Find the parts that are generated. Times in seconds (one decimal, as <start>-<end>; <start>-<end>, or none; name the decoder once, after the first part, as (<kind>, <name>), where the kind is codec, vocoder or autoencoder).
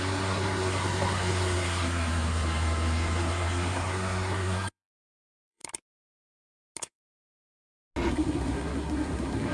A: 0.0-5.6 (codec, SNAC); 6.8-7.4; 8.1-9.5